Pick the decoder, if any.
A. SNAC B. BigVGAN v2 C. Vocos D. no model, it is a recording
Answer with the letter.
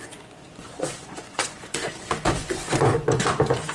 C